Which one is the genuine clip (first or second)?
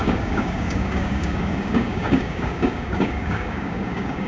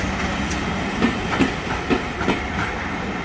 second